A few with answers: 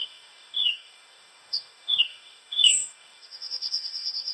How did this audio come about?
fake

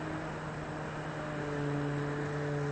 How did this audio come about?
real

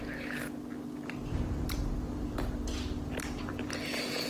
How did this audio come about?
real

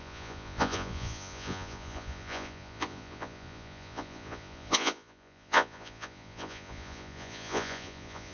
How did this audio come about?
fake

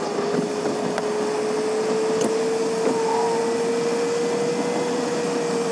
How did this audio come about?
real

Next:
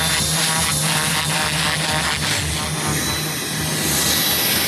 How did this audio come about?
real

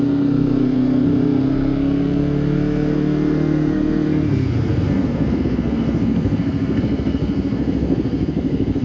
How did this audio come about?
fake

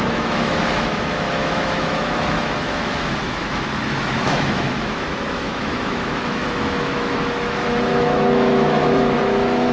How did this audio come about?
fake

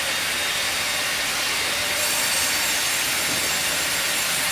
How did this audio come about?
real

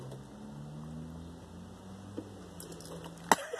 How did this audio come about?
real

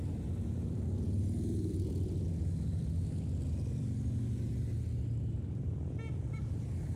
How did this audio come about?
real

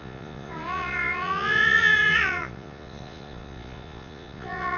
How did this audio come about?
fake